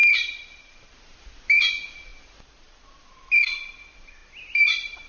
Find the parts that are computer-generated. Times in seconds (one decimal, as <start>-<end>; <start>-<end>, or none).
none